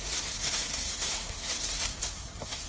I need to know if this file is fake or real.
fake